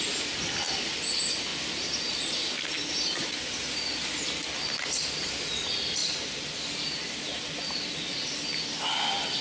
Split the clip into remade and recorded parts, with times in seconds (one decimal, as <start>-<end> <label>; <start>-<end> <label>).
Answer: 0.0-9.4 recorded